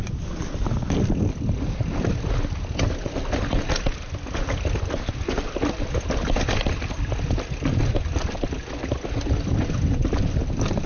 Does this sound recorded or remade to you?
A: recorded